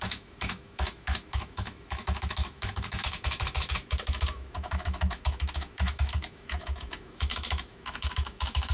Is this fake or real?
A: fake